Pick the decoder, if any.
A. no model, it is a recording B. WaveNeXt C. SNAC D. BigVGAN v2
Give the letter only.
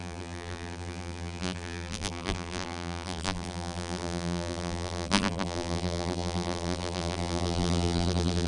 D